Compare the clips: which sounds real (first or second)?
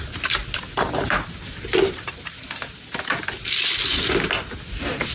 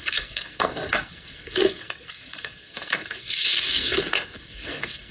first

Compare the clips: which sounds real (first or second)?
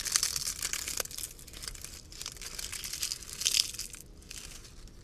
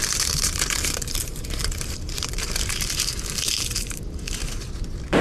first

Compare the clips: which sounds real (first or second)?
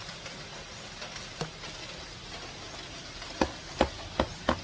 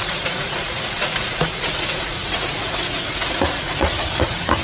first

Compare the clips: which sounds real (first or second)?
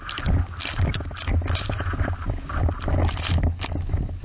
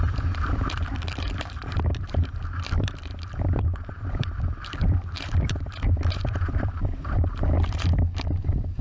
first